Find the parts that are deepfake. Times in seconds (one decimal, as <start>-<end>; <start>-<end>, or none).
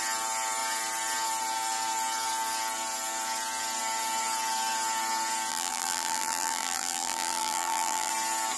5.5-8.1